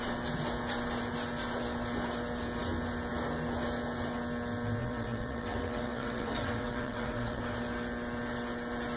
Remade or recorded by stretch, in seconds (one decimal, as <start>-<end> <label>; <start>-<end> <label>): 0.0-4.8 recorded; 4.8-7.4 remade; 7.4-9.0 recorded